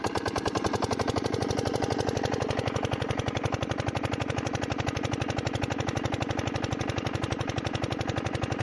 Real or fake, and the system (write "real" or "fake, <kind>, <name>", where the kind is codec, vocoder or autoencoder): real